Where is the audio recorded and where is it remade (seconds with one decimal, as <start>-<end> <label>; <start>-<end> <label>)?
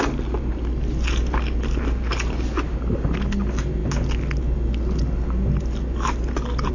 0.0-6.7 recorded